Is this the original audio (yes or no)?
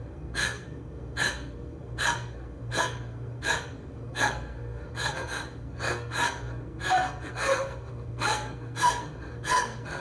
no